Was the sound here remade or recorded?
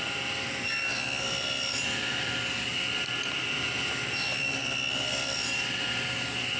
recorded